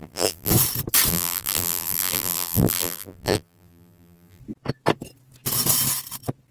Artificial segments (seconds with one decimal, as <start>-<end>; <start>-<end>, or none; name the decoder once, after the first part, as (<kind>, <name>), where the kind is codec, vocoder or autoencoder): 0.0-0.5 (vocoder, BigVGAN v2); 1.1-4.4